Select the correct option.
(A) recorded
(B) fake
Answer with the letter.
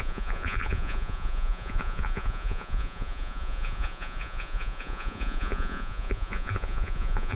B